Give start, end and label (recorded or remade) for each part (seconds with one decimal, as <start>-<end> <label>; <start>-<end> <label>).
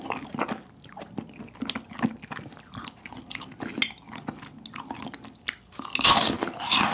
0.0-6.9 recorded